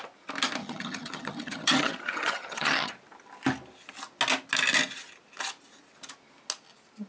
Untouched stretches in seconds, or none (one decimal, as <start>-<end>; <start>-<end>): 0.0-0.6; 2.9-7.1